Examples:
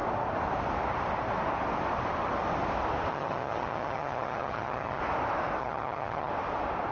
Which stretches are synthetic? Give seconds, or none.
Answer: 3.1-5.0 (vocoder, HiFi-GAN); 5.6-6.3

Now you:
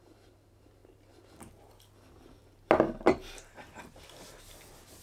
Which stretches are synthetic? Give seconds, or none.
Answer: none